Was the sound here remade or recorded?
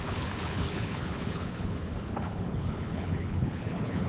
remade